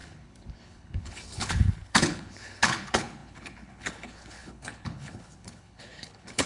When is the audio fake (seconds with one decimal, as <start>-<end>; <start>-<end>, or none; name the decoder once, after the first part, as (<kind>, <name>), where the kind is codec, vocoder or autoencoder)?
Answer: 0.0-6.5 (codec, HILCodec)